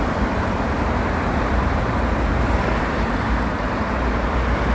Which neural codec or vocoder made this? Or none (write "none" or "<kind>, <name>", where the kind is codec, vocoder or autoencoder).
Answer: vocoder, BigVGAN v2